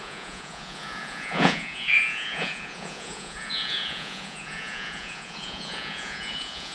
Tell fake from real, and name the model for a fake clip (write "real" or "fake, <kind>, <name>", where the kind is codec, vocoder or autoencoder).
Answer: fake, vocoder, Vocos